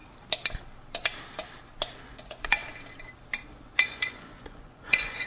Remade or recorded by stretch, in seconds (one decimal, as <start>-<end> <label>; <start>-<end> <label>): 0.0-2.0 recorded; 2.0-2.6 remade; 2.6-3.8 recorded; 3.8-5.3 remade